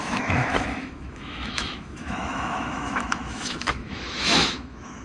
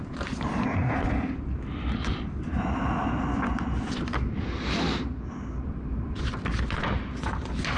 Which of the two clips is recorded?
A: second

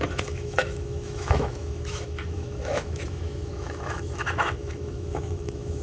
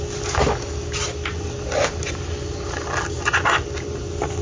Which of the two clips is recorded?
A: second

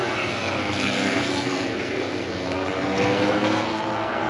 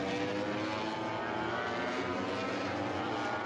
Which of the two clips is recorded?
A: second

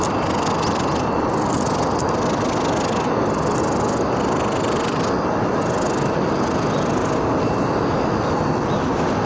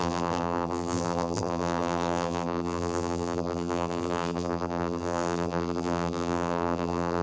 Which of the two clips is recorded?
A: first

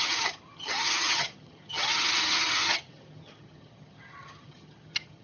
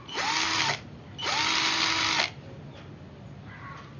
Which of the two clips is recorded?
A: second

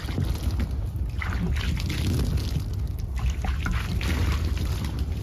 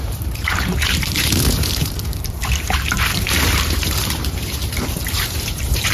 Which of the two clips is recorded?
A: first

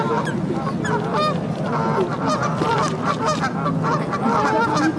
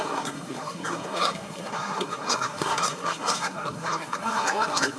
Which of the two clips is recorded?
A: first